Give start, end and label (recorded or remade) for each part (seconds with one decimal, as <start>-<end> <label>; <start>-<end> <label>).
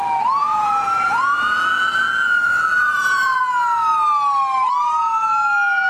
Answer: 0.0-0.4 recorded; 0.4-3.4 remade; 3.4-5.9 recorded